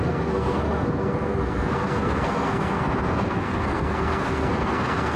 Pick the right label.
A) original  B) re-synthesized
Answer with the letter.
B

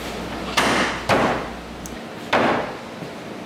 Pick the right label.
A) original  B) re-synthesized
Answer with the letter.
A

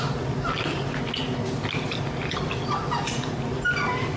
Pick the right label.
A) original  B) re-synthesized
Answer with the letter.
A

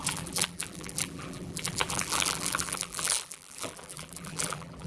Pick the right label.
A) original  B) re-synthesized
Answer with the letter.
B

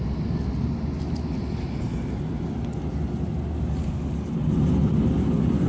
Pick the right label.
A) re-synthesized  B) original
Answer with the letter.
B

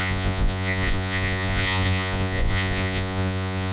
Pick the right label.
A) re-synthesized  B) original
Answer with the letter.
A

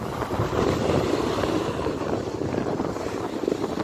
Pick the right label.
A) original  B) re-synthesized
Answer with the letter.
A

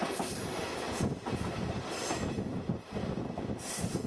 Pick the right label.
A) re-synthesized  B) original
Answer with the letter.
B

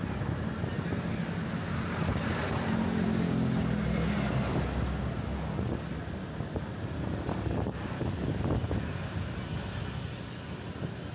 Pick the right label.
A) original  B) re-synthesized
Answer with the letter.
A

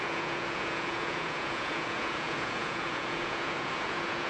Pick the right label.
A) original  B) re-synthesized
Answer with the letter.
B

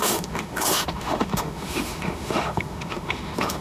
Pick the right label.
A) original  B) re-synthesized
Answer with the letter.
B